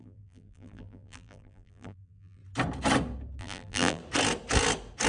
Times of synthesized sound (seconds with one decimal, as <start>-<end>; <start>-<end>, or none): 0.0-2.4; 3.4-4.0